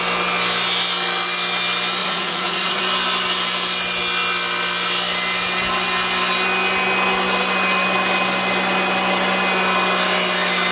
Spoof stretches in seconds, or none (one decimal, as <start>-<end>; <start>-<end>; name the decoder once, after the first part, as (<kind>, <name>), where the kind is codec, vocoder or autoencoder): 2.0-2.8 (vocoder, Vocos)